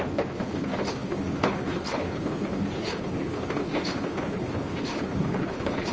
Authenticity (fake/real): fake